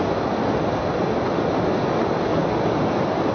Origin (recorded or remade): recorded